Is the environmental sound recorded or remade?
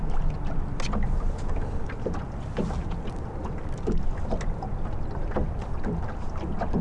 recorded